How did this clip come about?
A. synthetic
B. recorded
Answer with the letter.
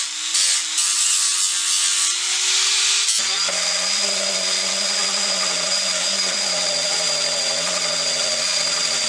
B